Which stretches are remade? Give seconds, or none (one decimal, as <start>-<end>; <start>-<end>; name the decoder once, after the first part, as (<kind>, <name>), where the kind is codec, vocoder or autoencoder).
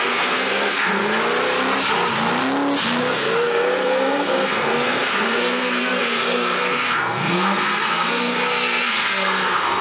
0.0-1.0 (codec, SNAC); 3.0-9.8